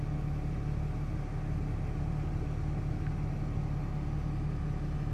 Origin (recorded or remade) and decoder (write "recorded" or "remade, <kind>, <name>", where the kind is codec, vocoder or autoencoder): recorded